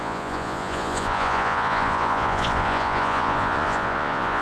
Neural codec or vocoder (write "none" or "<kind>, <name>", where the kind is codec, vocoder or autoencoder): vocoder, Vocos